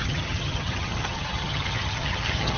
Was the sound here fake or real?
fake